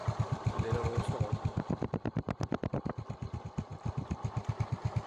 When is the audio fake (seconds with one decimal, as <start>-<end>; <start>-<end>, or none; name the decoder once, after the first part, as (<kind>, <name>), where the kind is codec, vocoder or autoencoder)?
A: none